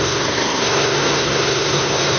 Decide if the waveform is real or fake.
fake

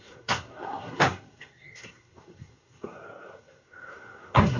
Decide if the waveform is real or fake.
fake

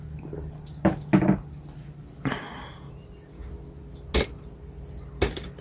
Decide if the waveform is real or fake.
real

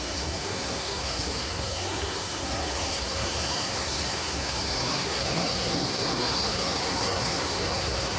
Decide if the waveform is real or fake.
fake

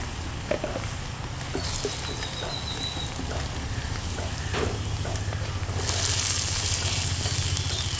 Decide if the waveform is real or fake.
real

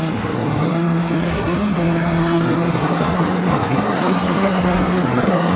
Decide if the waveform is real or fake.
fake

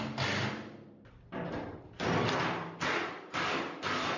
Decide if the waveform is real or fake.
real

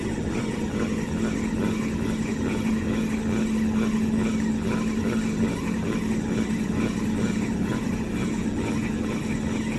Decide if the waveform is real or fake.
real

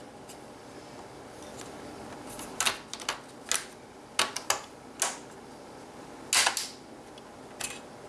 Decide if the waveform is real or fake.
real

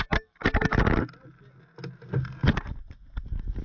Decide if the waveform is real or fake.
real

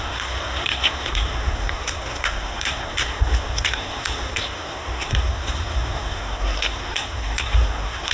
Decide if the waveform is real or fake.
fake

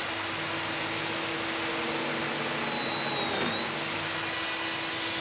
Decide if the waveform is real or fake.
real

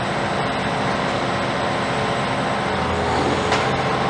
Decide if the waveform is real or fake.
real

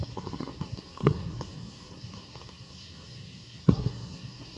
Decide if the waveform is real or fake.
fake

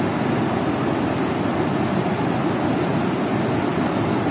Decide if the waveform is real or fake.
real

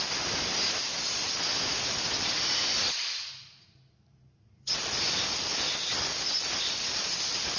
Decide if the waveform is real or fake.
real